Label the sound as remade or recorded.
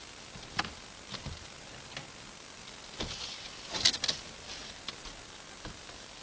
recorded